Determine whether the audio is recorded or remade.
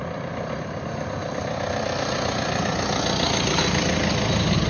recorded